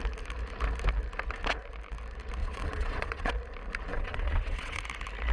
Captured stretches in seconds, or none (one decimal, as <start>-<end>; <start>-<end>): 0.0-2.4; 3.3-3.9; 4.8-5.3